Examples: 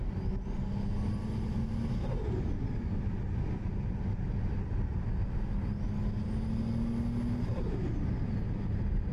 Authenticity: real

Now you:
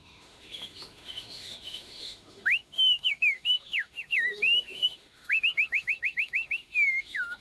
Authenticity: fake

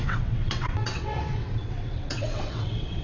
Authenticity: fake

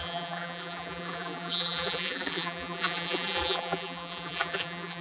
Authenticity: fake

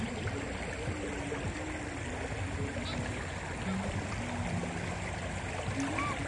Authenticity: real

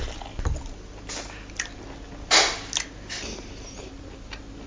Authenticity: real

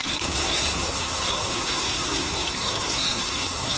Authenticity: fake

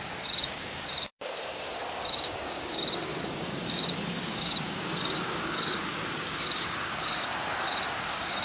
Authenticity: fake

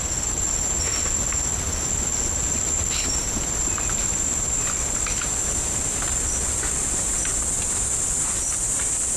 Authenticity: real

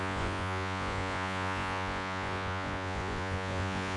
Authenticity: fake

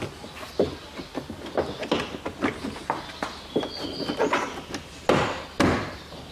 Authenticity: real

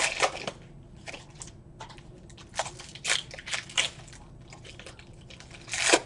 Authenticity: real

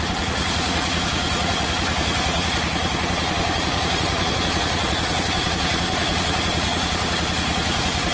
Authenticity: fake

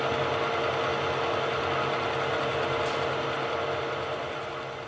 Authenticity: real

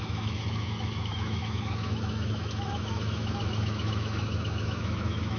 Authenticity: fake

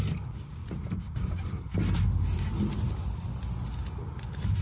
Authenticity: real